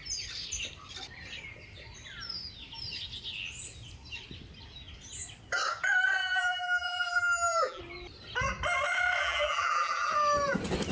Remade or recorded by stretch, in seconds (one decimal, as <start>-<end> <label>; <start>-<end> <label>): 0.0-6.2 recorded; 6.2-7.8 remade; 7.8-9.2 recorded; 9.2-10.1 remade; 10.1-10.9 recorded